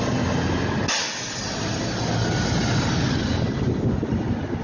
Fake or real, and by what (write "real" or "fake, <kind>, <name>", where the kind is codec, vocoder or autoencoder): real